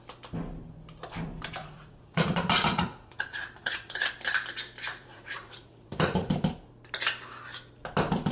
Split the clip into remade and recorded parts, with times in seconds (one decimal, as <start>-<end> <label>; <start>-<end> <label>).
0.0-1.6 recorded; 1.6-4.1 remade; 4.1-4.9 recorded; 4.9-6.3 remade; 6.3-8.3 recorded